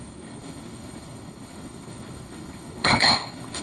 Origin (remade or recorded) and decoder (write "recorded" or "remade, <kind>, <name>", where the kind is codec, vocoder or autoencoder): remade, codec, HILCodec